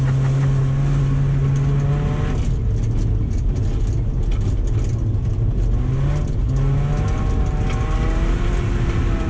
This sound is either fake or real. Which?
real